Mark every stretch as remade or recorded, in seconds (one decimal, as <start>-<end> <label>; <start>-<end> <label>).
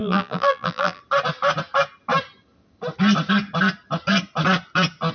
0.0-1.0 remade; 1.0-5.1 recorded